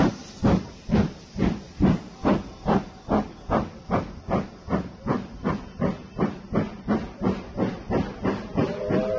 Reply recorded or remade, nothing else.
remade